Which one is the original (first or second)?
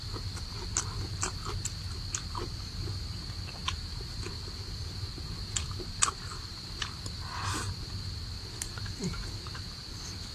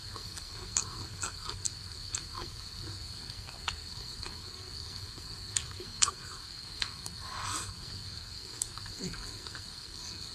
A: first